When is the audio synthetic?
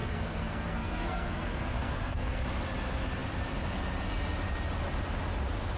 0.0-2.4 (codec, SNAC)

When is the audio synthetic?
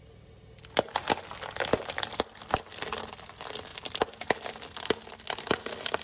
none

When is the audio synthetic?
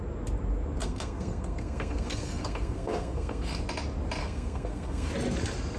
0.8-3.6 (codec, SNAC); 4.2-5.1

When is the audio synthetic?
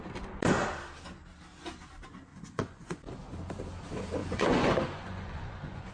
2.3-3.0 (vocoder, Vocos); 4.2-5.9